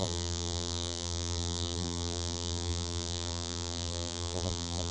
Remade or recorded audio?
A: remade